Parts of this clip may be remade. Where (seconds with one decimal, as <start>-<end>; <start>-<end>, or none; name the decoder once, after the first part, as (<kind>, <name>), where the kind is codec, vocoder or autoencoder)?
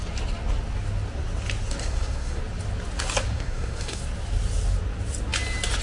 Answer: 1.8-2.4 (codec, SNAC); 3.3-4.0